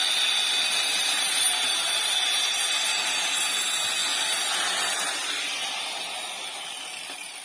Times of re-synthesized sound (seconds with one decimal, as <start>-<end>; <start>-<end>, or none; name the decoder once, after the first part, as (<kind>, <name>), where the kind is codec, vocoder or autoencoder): 1.0-3.4 (vocoder, BigVGAN v2)